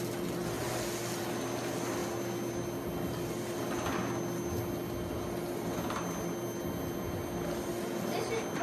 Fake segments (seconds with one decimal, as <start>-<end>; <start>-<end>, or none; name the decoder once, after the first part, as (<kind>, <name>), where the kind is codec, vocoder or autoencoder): none